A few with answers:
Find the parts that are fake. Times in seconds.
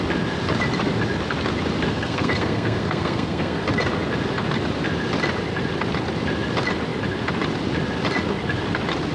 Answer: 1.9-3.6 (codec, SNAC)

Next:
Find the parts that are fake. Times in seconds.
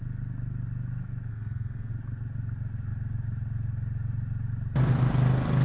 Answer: 1.3-1.9 (codec, SNAC)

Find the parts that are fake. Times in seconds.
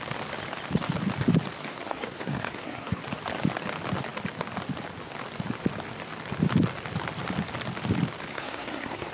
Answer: 1.7-3.0 (codec, SNAC); 8.3-9.1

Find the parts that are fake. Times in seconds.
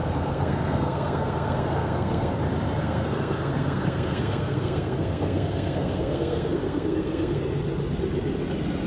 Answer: 0.0-2.4 (codec, SNAC); 2.8-7.4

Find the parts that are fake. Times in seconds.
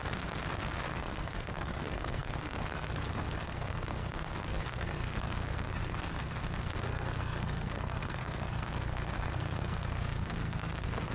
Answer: 0.0-11.1 (codec, SNAC)